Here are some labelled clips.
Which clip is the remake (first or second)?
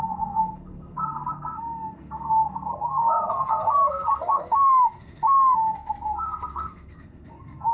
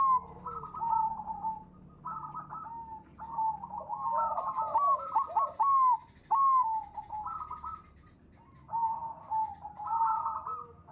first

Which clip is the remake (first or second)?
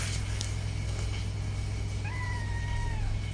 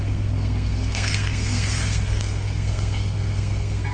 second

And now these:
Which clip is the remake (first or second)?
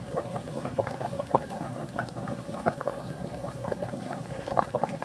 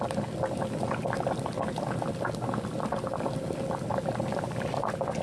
first